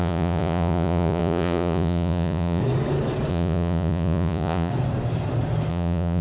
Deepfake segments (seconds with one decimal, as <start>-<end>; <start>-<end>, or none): 0.0-2.6; 3.3-4.7; 5.7-6.2